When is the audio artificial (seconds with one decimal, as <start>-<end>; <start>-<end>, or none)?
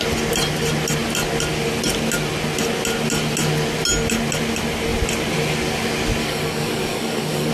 6.2-7.5